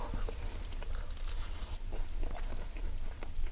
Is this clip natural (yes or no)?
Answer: yes